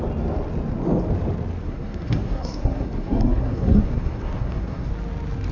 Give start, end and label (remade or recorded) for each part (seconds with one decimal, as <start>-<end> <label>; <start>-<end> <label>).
0.0-1.6 recorded; 1.6-4.9 remade; 4.9-5.5 recorded